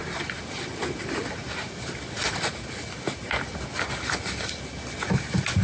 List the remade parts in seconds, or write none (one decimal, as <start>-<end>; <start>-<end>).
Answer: none